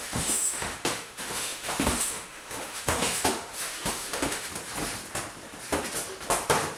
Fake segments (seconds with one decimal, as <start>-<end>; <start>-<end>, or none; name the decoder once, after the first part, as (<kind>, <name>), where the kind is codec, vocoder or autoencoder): 0.0-4.5 (autoencoder, DAC-VAE)